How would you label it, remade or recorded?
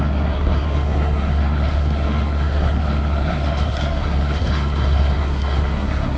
remade